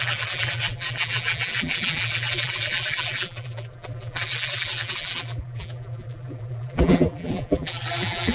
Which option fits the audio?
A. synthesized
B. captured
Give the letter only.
A